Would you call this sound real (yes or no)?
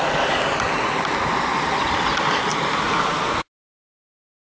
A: yes